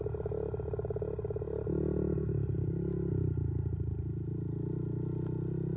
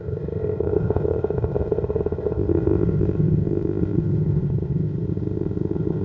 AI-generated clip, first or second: second